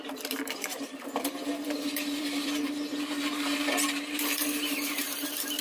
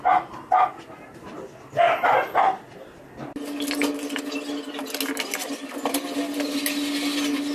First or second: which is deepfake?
first